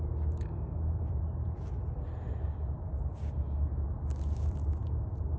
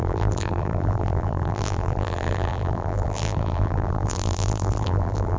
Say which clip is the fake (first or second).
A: second